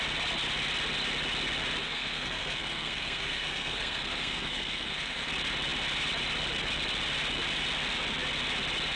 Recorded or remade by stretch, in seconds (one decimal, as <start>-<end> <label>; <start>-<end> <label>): 0.0-1.8 recorded; 1.8-5.3 remade; 5.3-9.0 recorded